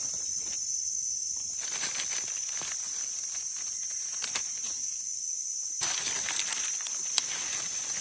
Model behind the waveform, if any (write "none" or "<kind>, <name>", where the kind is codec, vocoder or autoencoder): none